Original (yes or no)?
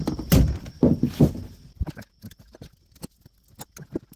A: yes